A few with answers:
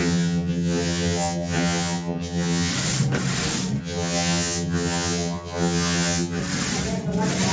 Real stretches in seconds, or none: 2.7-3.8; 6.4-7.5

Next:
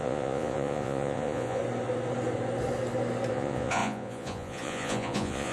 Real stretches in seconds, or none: 1.6-3.3

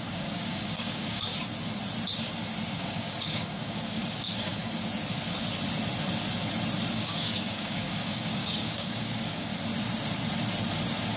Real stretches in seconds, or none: 1.3-2.7; 4.6-6.9; 9.5-11.2

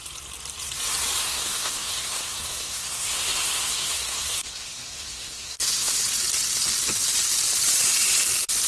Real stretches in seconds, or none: 0.0-1.2; 6.0-8.7

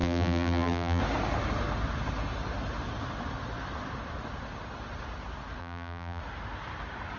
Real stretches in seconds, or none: 1.0-5.6; 6.2-7.2

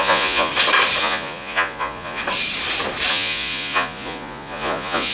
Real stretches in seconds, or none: 0.5-1.0; 2.2-3.1

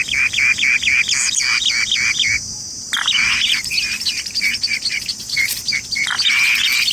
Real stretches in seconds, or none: 0.0-6.9

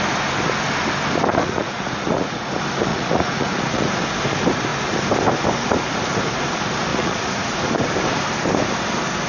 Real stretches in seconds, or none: 0.0-1.3; 2.5-2.9; 3.9-6.9; 7.5-9.3